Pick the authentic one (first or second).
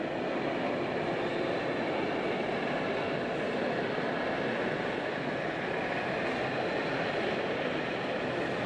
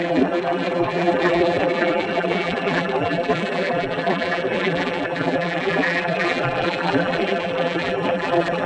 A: first